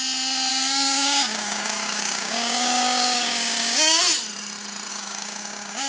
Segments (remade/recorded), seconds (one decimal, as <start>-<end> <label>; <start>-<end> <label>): 0.0-0.5 recorded; 0.5-4.0 remade; 4.0-4.9 recorded; 4.9-5.9 remade